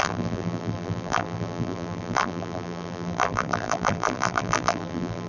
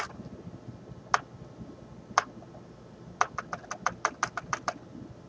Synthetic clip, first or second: first